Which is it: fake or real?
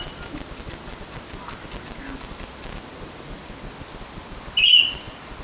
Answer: real